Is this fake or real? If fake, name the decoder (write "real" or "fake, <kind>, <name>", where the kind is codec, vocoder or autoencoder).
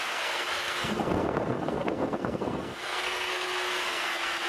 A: fake, codec, SNAC